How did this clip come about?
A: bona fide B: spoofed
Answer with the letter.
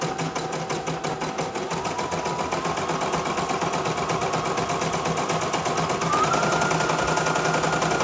A